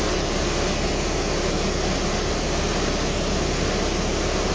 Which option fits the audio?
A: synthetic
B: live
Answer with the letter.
B